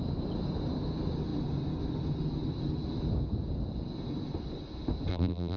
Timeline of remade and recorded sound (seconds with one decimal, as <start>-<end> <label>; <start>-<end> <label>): 0.0-5.1 recorded; 5.1-5.6 remade